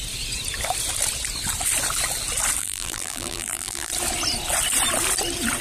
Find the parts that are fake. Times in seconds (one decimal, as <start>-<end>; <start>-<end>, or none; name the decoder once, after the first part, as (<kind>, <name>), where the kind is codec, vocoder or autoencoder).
2.6-3.9 (vocoder, BigVGAN v2)